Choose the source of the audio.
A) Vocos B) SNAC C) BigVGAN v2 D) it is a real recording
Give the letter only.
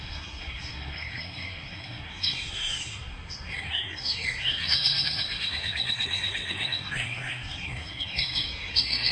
B